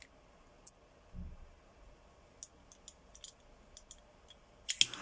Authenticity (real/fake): real